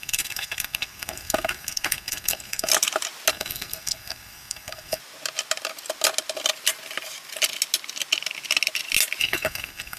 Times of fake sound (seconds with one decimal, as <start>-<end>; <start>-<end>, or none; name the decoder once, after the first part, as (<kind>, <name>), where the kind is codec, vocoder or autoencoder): 0.0-2.7 (codec, SNAC); 3.3-5.0; 9.2-10.0